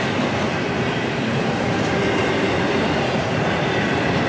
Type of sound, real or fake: fake